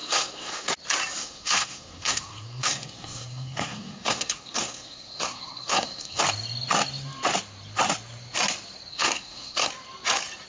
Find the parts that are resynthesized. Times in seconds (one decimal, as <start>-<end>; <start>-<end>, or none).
0.0-0.7; 1.2-6.2; 8.9-9.7